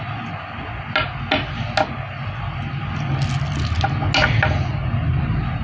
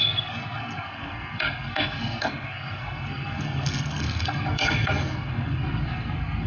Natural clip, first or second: first